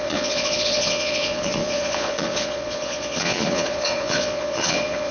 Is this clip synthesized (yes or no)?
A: yes